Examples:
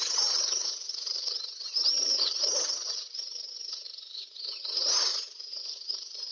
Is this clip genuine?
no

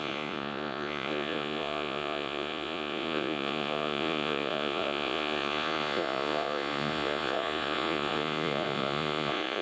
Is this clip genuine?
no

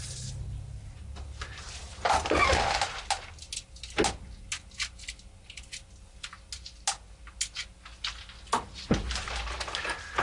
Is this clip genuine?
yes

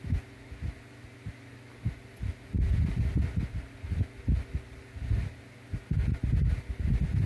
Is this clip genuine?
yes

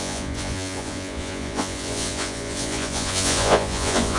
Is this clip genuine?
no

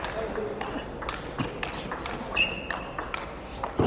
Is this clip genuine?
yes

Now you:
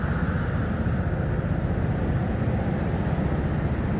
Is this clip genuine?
yes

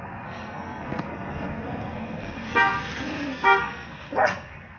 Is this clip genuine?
no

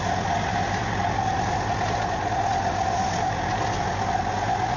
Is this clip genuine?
yes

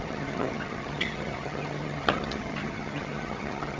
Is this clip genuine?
no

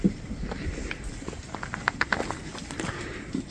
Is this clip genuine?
yes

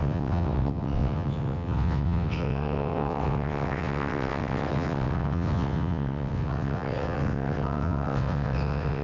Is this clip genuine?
no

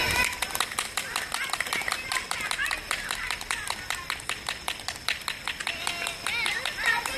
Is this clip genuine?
yes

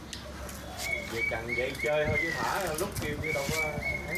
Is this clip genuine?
yes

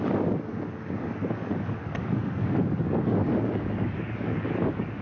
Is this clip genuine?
no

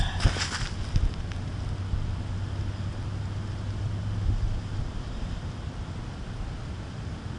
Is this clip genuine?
yes